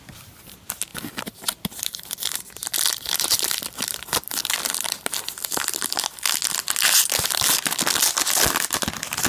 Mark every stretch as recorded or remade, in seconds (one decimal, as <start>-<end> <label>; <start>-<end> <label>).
0.0-9.3 recorded